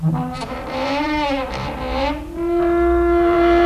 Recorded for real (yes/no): no